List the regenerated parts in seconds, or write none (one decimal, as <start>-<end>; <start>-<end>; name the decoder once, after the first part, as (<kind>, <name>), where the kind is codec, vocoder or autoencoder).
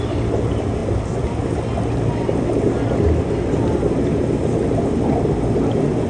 none